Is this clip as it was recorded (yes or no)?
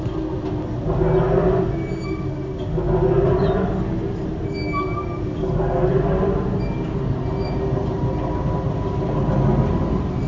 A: yes